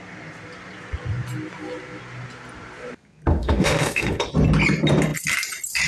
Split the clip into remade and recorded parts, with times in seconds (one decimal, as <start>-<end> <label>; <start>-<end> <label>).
0.0-3.3 recorded; 3.3-4.3 remade; 4.3-5.9 recorded